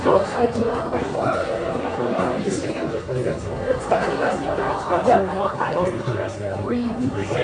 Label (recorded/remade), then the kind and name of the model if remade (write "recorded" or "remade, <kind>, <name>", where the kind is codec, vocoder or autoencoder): remade, codec, SNAC